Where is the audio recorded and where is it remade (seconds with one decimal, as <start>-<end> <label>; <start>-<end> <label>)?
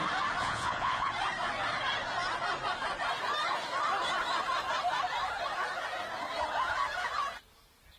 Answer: 0.0-0.4 recorded; 0.4-1.1 remade; 1.1-8.0 recorded